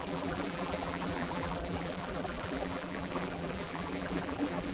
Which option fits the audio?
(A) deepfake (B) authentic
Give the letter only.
A